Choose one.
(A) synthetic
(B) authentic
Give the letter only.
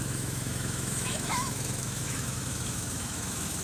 A